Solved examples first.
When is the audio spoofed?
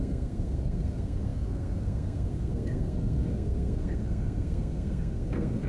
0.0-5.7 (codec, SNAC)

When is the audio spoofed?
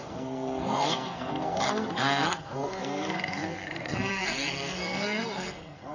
0.0-5.9 (codec, SNAC)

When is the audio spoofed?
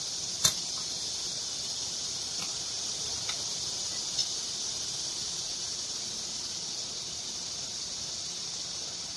none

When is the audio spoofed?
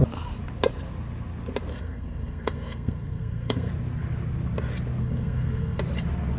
1.7-3.7 (codec, SNAC); 5.0-5.8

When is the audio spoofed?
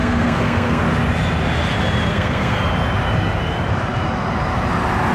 0.0-0.8 (codec, SNAC); 2.1-2.6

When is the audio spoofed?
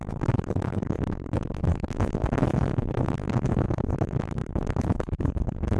0.0-5.8 (codec, SNAC)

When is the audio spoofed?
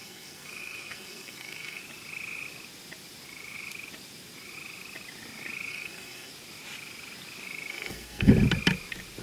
0.0-1.8 (codec, SNAC); 5.7-6.3; 7.7-8.3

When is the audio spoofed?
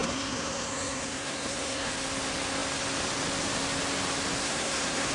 0.0-1.9 (codec, SNAC); 4.4-5.1